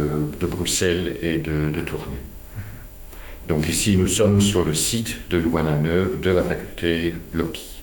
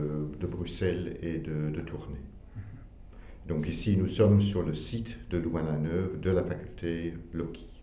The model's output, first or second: first